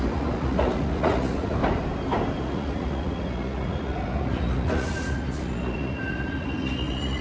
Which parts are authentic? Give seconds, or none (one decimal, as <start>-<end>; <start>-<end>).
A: 1.6-2.4